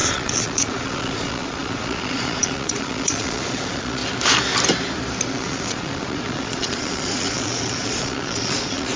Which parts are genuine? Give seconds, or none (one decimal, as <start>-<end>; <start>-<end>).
4.0-5.3